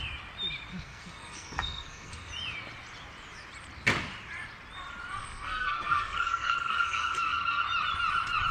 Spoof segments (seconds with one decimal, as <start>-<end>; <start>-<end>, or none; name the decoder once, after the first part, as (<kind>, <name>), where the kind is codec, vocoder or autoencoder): 0.7-2.3 (codec, SNAC); 5.2-7.6